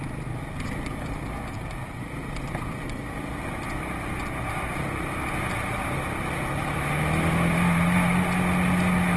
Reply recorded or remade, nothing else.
recorded